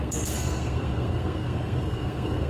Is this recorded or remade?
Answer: remade